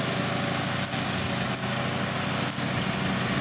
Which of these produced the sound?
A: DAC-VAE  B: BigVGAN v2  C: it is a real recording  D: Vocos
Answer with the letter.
C